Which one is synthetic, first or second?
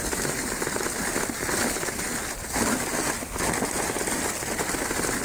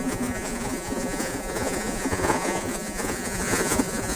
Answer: second